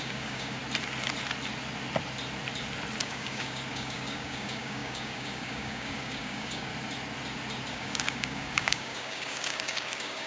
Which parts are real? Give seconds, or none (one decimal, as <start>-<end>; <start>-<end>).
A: 0.6-3.0; 6.7-7.7